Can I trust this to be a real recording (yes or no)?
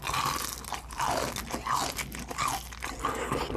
yes